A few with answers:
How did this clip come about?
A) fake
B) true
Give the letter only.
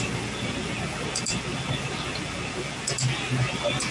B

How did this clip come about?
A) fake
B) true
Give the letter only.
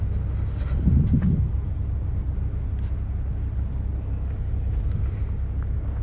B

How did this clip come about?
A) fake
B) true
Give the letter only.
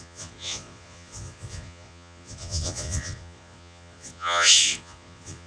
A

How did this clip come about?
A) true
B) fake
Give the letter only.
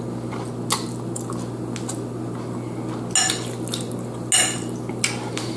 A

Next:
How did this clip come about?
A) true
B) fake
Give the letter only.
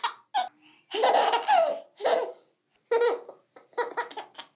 A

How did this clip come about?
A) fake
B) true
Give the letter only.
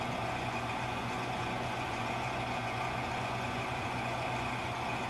A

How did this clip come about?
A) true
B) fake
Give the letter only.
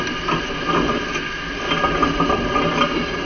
A